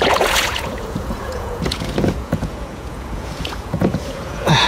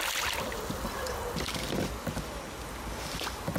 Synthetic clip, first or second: first